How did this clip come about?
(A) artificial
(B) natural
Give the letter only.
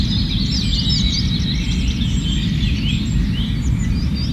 B